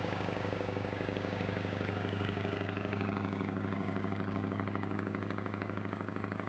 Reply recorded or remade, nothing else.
remade